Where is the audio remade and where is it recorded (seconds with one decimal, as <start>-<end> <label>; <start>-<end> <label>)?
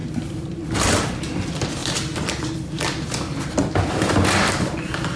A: 0.0-0.7 remade; 0.7-1.8 recorded; 1.8-2.4 remade; 2.4-5.2 recorded